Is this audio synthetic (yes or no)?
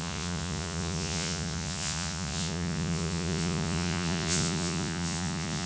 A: yes